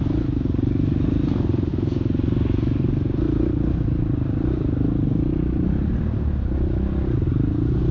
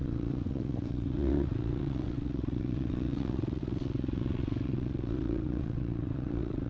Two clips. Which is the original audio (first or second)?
first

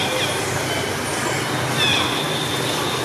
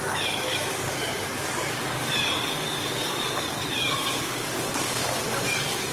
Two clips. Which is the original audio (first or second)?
first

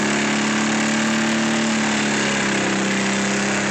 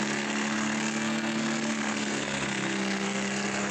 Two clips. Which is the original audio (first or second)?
first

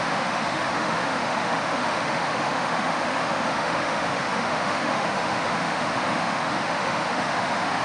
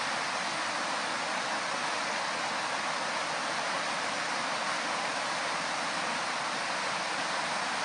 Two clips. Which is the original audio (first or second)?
second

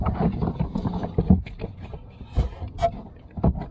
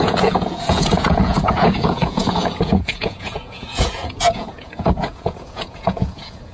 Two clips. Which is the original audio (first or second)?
first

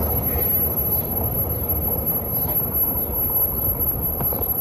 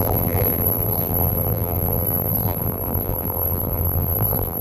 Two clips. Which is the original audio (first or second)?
first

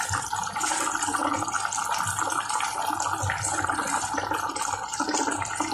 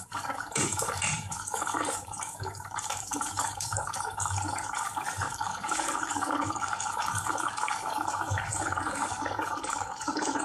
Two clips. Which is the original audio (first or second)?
first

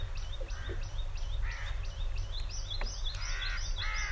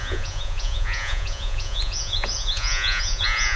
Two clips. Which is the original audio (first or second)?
first